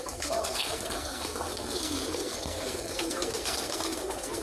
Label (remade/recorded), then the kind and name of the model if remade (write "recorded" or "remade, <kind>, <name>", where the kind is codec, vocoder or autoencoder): remade, codec, SNAC